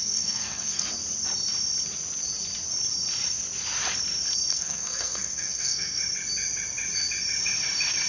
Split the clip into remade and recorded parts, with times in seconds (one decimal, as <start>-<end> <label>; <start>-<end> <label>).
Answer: 0.0-0.8 remade; 0.8-4.5 recorded; 4.5-6.0 remade; 6.0-8.1 recorded